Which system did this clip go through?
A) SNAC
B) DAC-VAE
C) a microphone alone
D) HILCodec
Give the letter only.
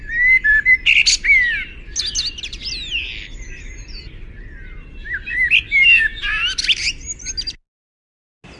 C